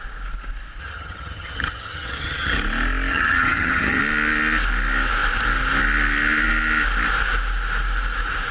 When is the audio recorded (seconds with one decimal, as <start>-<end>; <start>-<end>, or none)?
0.0-0.8; 2.6-3.1; 4.0-8.5